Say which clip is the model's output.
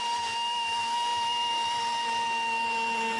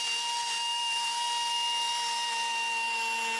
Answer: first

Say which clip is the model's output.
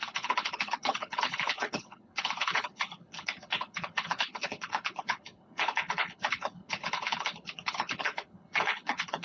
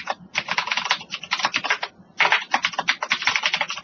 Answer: first